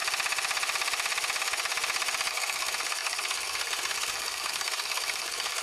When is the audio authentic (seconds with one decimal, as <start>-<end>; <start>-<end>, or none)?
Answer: 0.0-2.3